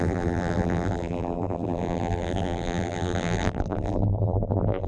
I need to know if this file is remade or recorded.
remade